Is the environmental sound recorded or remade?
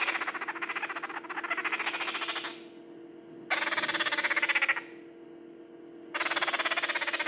recorded